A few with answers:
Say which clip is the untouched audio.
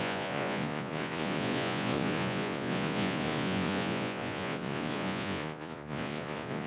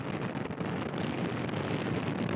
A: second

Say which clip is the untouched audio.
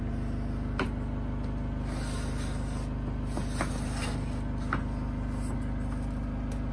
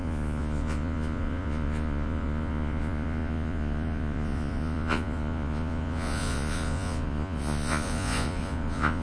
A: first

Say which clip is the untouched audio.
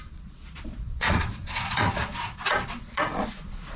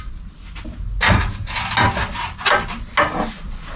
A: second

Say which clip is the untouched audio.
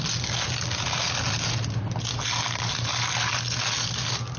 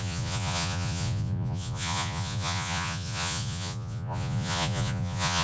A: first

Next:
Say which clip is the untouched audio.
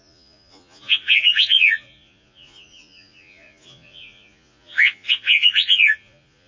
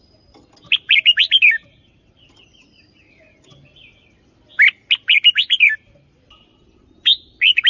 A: second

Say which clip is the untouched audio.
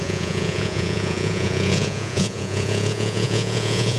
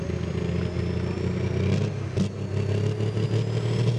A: second